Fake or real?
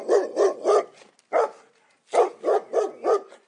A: real